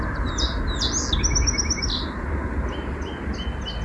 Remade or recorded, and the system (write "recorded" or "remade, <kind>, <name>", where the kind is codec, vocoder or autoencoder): recorded